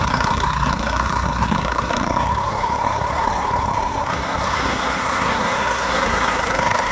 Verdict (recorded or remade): remade